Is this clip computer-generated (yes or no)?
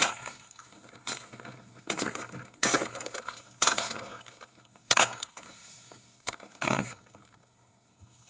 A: yes